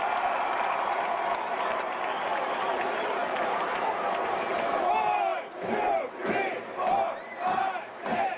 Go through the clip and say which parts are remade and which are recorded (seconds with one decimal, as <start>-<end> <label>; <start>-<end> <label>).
0.0-8.4 remade